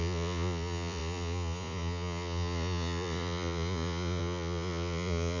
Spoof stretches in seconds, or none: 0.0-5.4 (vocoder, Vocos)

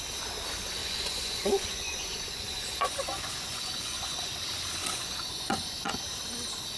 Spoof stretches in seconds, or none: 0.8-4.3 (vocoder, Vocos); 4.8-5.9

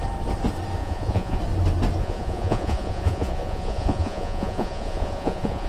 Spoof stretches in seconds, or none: 0.8-1.4 (vocoder, Vocos); 2.0-5.7